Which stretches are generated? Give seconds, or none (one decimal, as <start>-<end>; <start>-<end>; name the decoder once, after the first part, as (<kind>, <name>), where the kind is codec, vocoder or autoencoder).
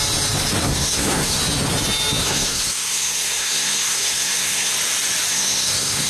0.6-1.4 (codec, SNAC); 2.2-4.7; 5.3-6.1